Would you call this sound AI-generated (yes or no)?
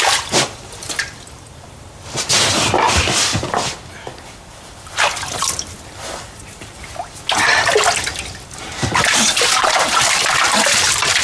no